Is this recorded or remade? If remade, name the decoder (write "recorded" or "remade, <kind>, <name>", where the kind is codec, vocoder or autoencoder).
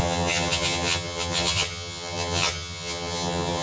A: remade, vocoder, HiFi-GAN